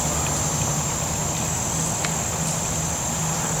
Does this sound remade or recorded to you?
recorded